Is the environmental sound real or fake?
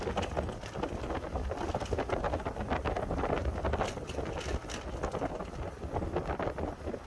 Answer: real